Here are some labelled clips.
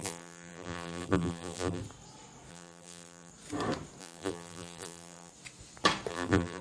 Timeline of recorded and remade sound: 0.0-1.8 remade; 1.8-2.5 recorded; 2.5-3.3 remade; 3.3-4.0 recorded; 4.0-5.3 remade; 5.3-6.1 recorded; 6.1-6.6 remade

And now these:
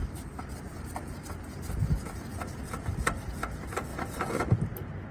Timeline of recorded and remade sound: 0.0-3.9 recorded; 3.9-4.4 remade; 4.4-5.1 recorded

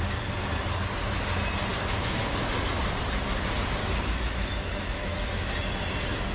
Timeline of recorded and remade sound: 0.0-1.7 recorded; 1.7-2.8 remade; 2.8-3.8 recorded; 3.8-5.5 remade; 5.5-6.3 recorded